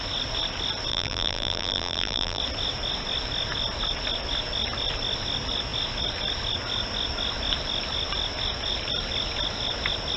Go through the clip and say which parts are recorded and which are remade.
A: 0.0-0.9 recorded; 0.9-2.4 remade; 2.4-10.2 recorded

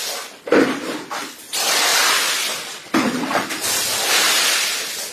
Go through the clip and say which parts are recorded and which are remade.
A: 0.0-5.1 recorded

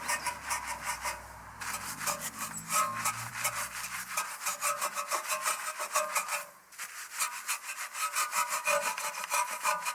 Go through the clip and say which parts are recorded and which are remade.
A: 0.0-9.9 recorded

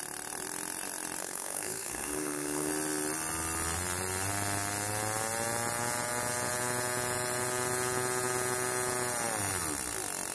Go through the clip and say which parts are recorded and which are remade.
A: 0.0-1.2 recorded; 1.2-2.7 remade; 2.7-10.3 recorded

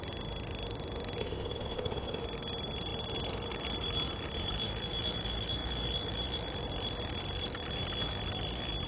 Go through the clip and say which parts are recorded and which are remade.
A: 0.0-1.2 recorded; 1.2-2.2 remade; 2.2-8.9 recorded

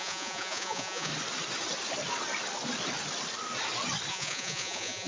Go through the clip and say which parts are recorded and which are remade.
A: 0.0-1.1 remade; 1.1-4.1 recorded; 4.1-5.1 remade

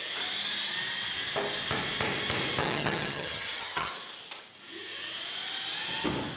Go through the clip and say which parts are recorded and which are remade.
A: 0.0-2.6 recorded; 2.6-3.9 remade; 3.9-6.4 recorded